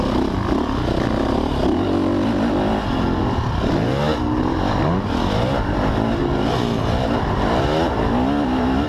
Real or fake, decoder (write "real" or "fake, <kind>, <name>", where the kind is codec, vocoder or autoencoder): real